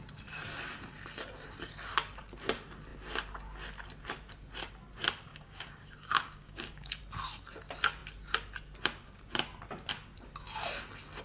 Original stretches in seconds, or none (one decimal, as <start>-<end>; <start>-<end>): 0.0-5.3; 7.0-11.2

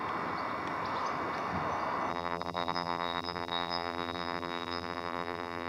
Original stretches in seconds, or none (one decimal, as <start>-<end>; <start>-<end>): 0.0-2.1

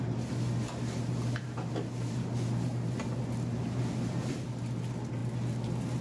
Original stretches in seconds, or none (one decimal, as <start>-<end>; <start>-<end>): 0.0-6.0